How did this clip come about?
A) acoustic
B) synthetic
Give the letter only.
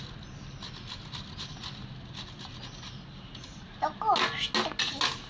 A